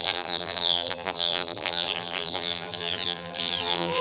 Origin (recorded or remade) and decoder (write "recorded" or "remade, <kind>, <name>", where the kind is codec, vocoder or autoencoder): remade, vocoder, BigVGAN v2